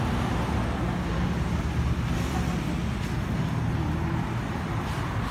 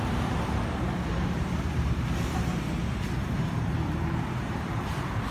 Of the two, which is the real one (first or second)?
first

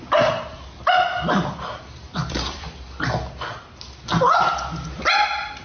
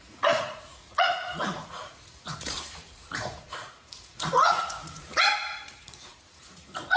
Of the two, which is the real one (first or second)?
first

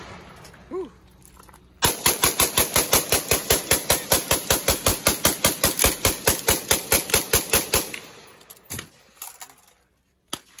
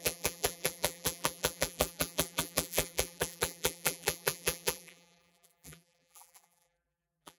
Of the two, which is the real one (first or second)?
first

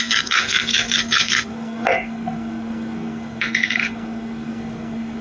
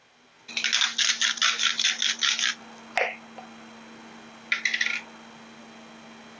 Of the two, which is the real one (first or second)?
second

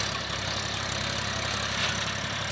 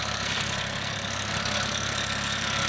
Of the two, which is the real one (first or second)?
first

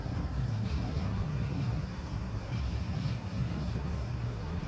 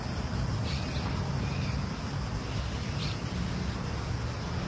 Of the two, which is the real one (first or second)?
second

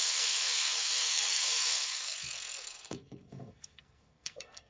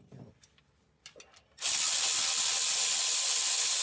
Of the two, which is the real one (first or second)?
second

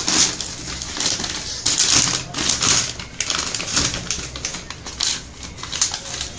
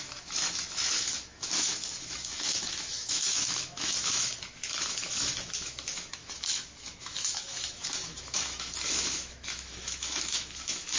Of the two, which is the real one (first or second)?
first